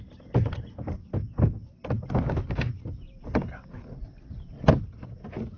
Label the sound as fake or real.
real